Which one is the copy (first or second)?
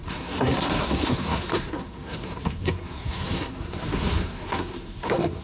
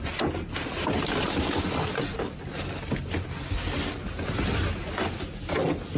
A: first